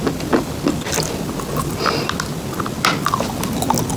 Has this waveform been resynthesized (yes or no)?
no